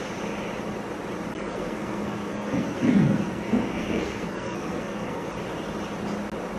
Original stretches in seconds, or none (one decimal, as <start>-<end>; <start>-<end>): 0.0-1.3; 5.3-6.6